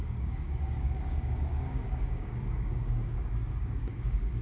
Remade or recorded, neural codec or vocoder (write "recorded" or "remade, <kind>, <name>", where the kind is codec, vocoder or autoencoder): remade, codec, DAC